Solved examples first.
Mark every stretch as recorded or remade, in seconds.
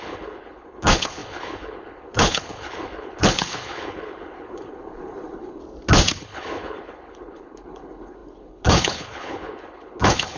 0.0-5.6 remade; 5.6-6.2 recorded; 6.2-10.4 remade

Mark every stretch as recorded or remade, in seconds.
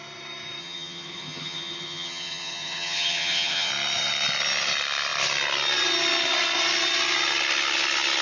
0.0-0.6 recorded; 0.6-3.7 remade; 3.7-8.2 recorded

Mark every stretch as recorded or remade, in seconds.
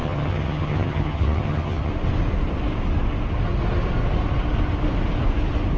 0.0-1.9 remade; 1.9-5.8 recorded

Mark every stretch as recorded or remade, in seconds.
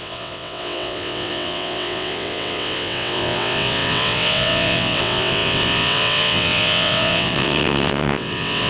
0.0-8.7 remade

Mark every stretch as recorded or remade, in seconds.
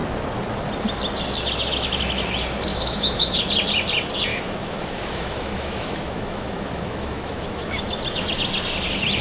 0.0-2.7 recorded; 2.7-3.4 remade; 3.4-4.3 recorded; 4.3-8.0 remade; 8.0-9.2 recorded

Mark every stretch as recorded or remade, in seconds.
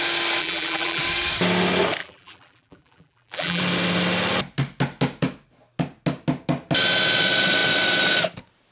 0.0-0.4 recorded; 0.4-1.0 remade; 1.0-2.0 recorded; 2.0-3.6 remade; 3.6-8.7 recorded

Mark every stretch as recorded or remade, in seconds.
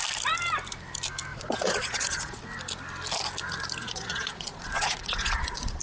0.0-1.3 recorded; 1.3-2.4 remade; 2.4-3.8 recorded; 3.8-5.8 remade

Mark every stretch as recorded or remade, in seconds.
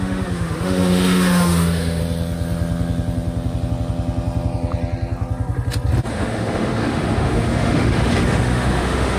0.0-2.0 remade; 2.0-6.1 recorded; 6.1-9.2 remade